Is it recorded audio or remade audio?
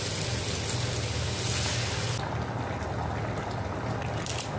recorded